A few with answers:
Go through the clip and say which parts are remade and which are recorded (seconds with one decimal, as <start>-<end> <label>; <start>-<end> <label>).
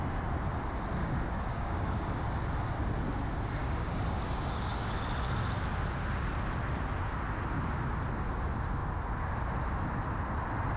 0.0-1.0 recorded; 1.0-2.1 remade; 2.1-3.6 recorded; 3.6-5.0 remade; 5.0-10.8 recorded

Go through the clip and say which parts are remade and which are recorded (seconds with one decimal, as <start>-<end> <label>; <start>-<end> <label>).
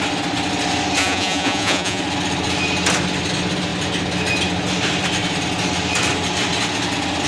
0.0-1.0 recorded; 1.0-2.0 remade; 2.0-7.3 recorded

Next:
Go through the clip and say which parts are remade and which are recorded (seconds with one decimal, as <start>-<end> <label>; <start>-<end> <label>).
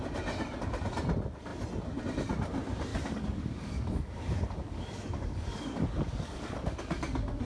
0.0-2.9 recorded; 2.9-7.4 remade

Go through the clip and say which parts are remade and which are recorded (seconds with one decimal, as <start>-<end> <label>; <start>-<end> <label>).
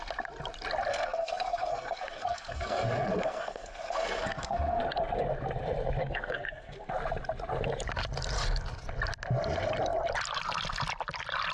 0.0-0.9 recorded; 0.9-4.8 remade; 4.8-6.0 recorded; 6.0-6.9 remade; 6.9-11.5 recorded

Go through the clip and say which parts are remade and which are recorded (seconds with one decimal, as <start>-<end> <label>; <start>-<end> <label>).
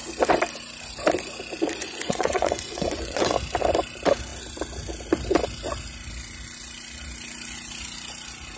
0.0-1.8 recorded; 1.8-3.3 remade; 3.3-8.6 recorded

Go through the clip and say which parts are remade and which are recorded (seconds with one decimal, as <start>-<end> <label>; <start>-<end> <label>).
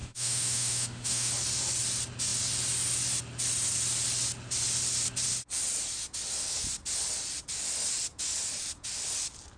0.0-1.3 remade; 1.3-9.6 recorded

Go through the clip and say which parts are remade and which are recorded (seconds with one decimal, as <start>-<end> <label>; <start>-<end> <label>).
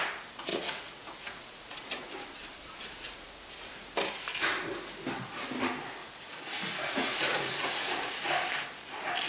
0.0-0.5 recorded; 0.5-3.7 remade; 3.7-6.0 recorded; 6.0-8.3 remade; 8.3-9.3 recorded